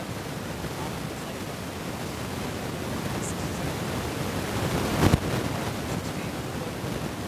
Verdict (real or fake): real